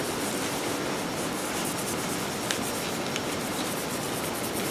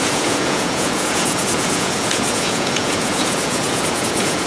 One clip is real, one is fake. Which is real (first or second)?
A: first